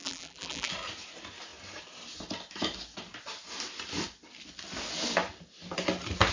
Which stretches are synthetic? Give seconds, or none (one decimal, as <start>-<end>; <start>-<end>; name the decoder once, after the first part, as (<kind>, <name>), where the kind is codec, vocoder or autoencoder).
0.0-0.7 (vocoder, BigVGAN v2)